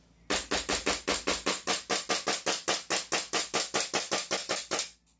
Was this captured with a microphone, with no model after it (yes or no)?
yes